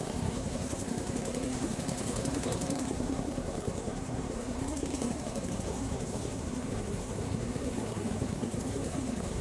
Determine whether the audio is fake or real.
fake